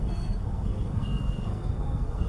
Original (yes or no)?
no